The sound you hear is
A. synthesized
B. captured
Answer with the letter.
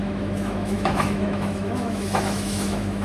A